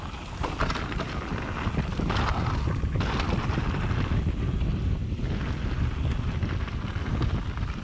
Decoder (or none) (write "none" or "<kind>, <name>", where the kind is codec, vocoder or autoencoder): none